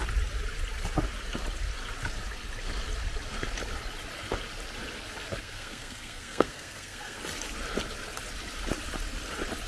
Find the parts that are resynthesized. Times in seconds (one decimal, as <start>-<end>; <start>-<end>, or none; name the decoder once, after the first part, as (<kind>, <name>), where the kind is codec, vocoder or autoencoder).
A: 5.4-7.2 (codec, SNAC)